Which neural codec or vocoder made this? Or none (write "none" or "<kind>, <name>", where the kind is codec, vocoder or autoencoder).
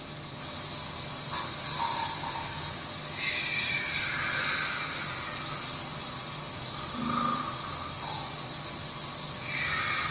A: none